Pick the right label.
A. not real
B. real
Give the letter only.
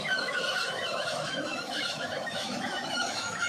A